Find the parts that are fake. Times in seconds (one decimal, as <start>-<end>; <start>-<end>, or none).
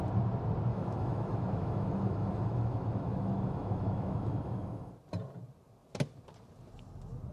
0.7-4.9